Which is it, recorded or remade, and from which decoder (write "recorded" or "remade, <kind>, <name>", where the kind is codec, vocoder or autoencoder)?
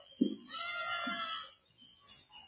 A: remade, vocoder, BigVGAN v2